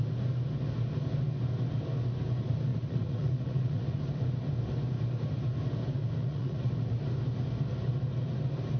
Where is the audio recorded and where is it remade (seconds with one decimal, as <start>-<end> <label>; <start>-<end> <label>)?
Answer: 0.0-2.7 recorded; 2.7-4.0 remade; 4.0-6.2 recorded; 6.2-6.7 remade; 6.7-8.8 recorded